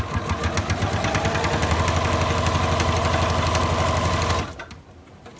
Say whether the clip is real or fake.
real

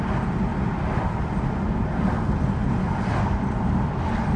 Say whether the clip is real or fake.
real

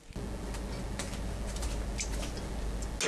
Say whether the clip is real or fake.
real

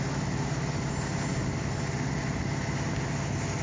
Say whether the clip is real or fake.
real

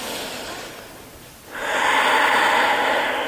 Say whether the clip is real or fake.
real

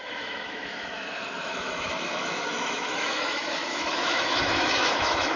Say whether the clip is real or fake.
fake